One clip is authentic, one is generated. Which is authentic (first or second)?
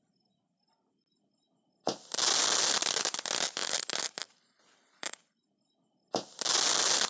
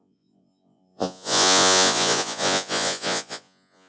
first